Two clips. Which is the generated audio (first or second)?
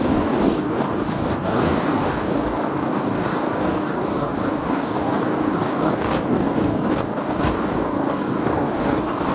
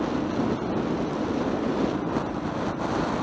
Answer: first